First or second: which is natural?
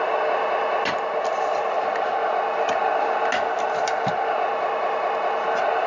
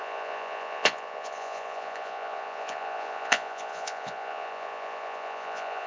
first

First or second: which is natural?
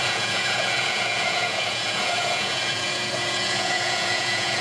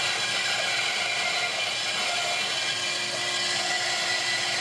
second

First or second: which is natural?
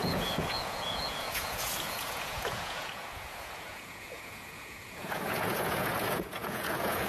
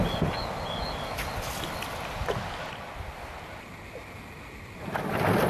second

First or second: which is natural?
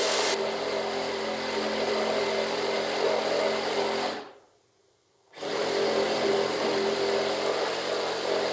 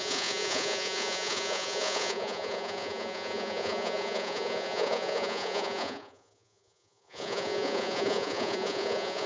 first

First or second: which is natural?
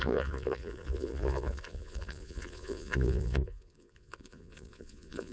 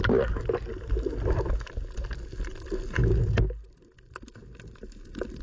second